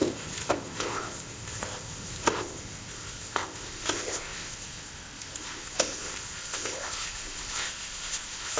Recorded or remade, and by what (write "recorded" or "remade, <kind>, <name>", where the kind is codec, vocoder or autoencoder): remade, codec, ZipCodec